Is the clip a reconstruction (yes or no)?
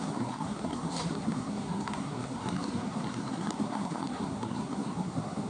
yes